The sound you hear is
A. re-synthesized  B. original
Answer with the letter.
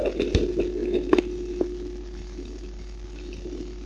B